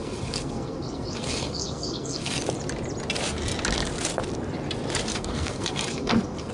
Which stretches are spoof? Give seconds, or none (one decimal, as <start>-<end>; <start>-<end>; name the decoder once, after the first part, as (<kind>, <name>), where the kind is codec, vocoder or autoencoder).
0.0-2.4 (codec, SNAC); 5.1-6.5